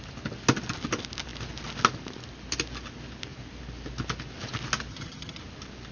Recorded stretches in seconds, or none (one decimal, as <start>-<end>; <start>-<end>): 0.0-4.9; 5.4-5.9